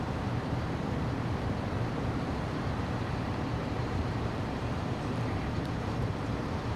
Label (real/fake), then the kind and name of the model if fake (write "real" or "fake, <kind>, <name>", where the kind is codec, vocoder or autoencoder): fake, vocoder, BigVGAN v2